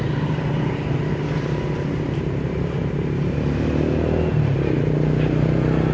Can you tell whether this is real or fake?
real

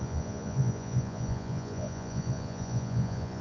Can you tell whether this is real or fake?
fake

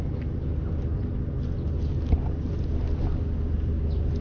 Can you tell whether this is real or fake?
real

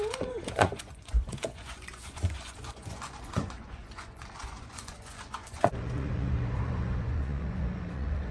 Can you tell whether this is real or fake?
fake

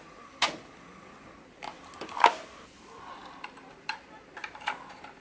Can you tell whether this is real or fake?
real